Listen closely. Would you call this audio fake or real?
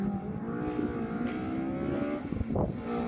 real